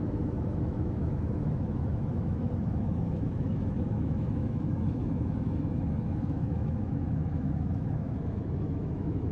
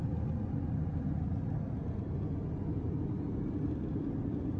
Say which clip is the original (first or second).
second